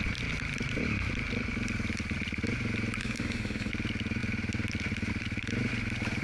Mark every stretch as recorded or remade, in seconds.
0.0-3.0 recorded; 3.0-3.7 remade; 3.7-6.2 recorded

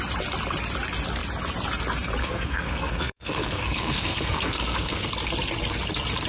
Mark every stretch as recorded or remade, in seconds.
0.0-2.2 recorded; 2.2-5.1 remade; 5.1-6.3 recorded

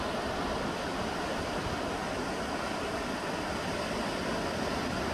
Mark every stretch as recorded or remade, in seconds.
0.0-5.1 recorded

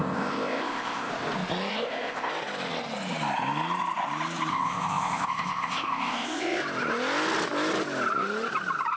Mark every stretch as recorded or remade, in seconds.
0.0-1.1 remade; 1.1-1.7 recorded; 1.7-2.3 remade; 2.3-4.5 recorded; 4.5-6.6 remade; 6.6-9.0 recorded